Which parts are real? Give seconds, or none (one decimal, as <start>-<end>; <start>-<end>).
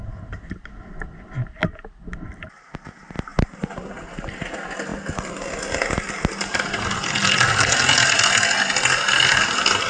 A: 0.0-3.3; 3.9-9.9